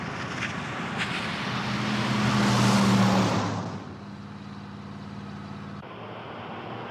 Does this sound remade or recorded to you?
recorded